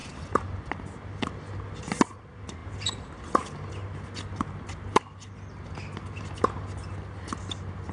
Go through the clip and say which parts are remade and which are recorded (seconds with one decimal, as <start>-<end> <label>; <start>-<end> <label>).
0.0-2.6 recorded; 2.6-3.7 remade; 3.7-7.9 recorded